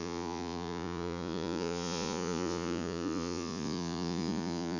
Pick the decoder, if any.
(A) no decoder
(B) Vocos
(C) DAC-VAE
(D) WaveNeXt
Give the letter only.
B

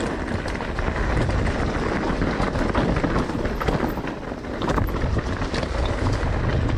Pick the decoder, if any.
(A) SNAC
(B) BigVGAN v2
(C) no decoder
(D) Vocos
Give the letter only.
C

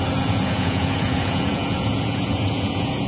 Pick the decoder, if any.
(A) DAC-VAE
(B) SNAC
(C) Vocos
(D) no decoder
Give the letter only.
C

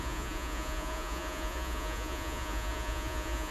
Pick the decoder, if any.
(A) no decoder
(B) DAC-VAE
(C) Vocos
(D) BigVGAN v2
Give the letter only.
C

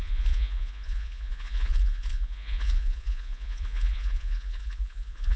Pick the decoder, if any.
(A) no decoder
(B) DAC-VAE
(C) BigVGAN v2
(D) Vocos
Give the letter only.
D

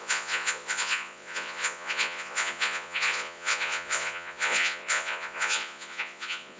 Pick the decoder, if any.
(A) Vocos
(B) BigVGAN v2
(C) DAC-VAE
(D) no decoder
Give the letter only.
A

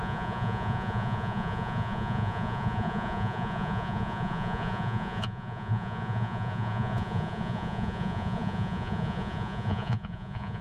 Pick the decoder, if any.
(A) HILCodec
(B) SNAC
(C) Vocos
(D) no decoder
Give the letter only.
C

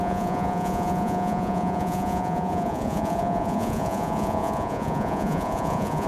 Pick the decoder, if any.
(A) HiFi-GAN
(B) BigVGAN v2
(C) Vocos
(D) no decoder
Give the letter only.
C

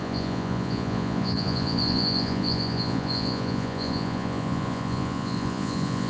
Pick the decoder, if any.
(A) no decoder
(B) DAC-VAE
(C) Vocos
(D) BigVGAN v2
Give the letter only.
C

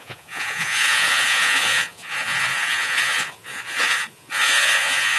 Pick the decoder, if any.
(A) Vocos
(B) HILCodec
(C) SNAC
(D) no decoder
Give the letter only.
A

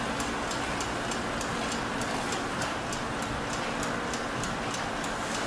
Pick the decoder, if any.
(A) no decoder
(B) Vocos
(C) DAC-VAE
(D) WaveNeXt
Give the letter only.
A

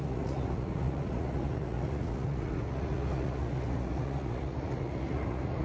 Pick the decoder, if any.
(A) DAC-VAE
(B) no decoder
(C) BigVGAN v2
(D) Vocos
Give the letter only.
D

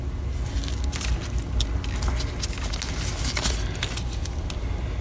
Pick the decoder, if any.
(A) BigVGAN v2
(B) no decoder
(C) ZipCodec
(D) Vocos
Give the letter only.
B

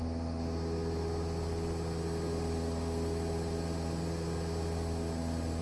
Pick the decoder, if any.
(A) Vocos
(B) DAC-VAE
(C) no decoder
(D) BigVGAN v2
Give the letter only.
C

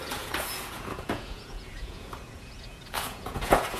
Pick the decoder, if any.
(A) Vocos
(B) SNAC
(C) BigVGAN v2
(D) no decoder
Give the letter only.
A